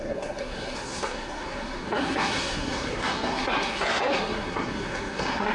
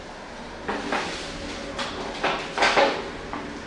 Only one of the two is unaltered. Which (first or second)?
second